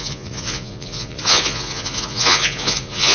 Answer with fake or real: fake